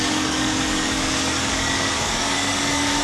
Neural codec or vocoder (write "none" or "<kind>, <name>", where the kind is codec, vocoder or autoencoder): codec, DAC